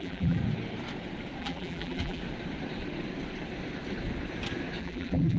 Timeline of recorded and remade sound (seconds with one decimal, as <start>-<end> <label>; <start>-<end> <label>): 0.0-0.4 remade; 0.4-1.4 recorded; 1.4-2.2 remade; 2.2-4.8 recorded; 4.8-5.4 remade